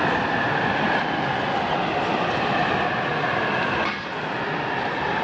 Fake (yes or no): no